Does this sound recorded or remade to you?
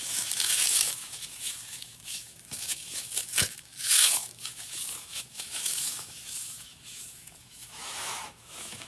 remade